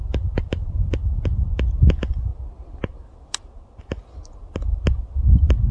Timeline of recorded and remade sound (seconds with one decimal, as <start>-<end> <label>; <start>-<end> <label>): 0.0-5.7 recorded